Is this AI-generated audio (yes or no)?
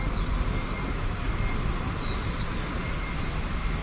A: no